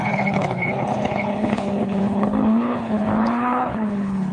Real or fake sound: fake